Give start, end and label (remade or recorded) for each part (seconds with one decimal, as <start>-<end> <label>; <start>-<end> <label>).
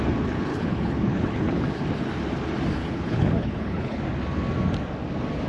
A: 0.0-0.5 recorded; 0.5-1.6 remade; 1.6-2.8 recorded; 2.8-4.0 remade; 4.0-5.5 recorded